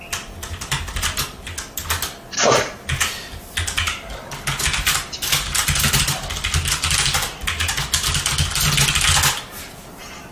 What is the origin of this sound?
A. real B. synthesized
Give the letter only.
A